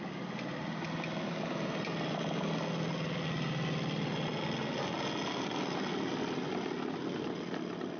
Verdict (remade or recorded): recorded